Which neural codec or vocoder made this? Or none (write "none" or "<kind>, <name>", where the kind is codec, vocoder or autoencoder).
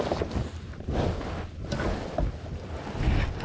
none